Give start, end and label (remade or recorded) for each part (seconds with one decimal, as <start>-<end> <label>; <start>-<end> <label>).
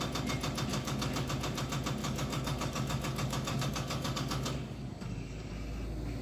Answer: 0.0-0.7 recorded; 0.7-1.3 remade; 1.3-2.0 recorded; 2.0-5.5 remade; 5.5-6.2 recorded